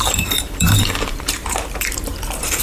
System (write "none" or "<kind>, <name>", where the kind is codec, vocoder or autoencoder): vocoder, BigVGAN v2